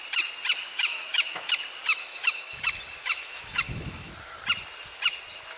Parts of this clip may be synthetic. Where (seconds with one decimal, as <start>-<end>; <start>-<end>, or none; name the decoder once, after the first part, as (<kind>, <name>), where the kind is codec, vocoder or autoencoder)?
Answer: 0.7-1.5 (autoencoder, DAC-VAE); 1.9-2.6; 3.0-4.1